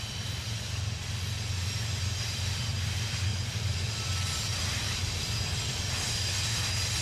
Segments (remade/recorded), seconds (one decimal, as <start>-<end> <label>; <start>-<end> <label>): 0.0-1.0 remade; 1.0-1.7 recorded; 1.7-7.0 remade

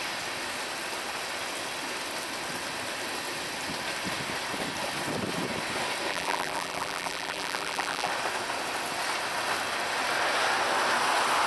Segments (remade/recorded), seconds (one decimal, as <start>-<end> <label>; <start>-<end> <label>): 0.0-6.1 recorded; 6.1-8.1 remade; 8.1-11.5 recorded

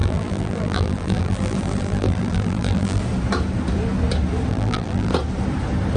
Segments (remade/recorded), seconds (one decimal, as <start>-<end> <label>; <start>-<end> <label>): 0.0-3.0 remade; 3.0-4.5 recorded; 4.5-5.1 remade; 5.1-6.0 recorded

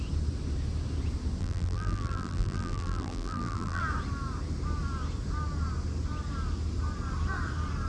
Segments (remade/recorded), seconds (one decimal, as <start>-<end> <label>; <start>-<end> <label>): 0.0-1.4 recorded; 1.4-3.8 remade; 3.8-7.9 recorded

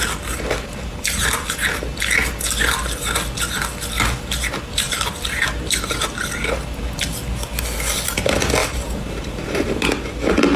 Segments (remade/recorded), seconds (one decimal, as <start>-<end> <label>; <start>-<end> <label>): 0.0-8.6 recorded; 8.6-9.9 remade; 9.9-10.6 recorded

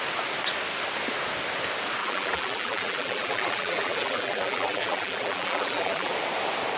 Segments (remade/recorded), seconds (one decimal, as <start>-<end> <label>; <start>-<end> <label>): 0.0-2.0 recorded; 2.0-6.1 remade; 6.1-6.8 recorded

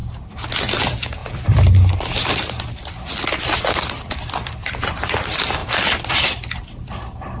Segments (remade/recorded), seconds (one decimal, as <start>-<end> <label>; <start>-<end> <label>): 0.0-0.6 recorded; 0.6-5.6 remade; 5.6-6.1 recorded; 6.1-7.4 remade